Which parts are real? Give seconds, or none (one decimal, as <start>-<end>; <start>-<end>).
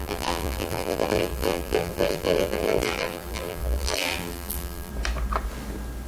4.9-6.1